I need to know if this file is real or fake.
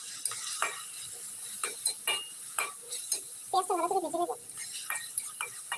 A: fake